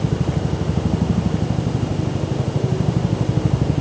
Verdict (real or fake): real